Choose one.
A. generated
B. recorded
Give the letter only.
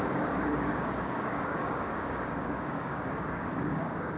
A